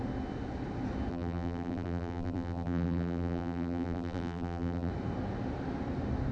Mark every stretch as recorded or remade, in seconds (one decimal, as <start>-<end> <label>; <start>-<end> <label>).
0.0-1.1 recorded; 1.1-4.9 remade; 4.9-6.3 recorded